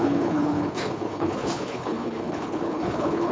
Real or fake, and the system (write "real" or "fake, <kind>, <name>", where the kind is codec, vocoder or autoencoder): fake, codec, HILCodec